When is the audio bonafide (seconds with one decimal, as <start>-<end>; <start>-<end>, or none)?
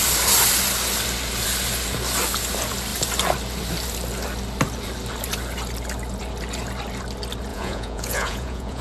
0.0-7.5